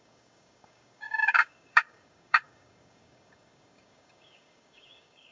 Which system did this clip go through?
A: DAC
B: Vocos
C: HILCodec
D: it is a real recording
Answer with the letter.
A